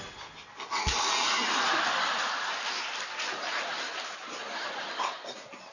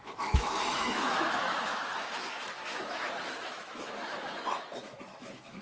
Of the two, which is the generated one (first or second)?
second